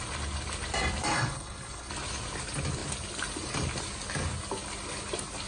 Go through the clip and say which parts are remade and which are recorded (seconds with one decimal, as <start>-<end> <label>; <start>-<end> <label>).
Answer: 0.0-1.1 recorded; 1.1-1.9 remade; 1.9-5.5 recorded